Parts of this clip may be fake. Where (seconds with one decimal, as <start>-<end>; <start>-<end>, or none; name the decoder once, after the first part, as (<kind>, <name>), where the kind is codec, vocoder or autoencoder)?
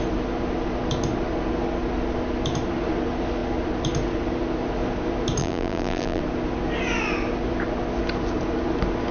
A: 5.4-6.2 (vocoder, BigVGAN v2)